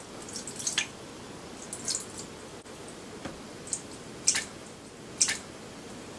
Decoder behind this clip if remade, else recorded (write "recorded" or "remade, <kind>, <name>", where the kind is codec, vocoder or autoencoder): recorded